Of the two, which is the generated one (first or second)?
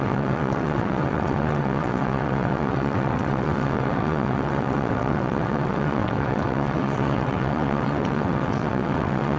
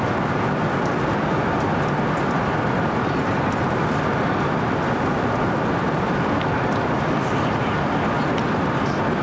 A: first